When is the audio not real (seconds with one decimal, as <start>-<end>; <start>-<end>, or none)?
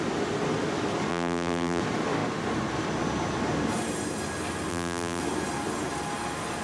1.1-1.8; 4.7-5.2